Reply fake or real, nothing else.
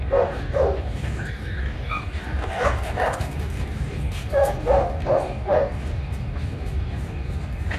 fake